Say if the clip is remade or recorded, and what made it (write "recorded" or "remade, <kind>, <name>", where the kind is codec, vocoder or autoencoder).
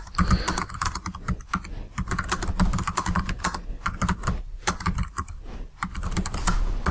recorded